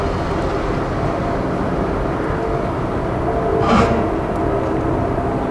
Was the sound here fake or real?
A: real